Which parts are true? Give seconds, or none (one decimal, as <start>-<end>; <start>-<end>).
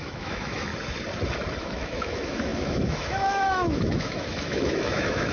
0.7-1.6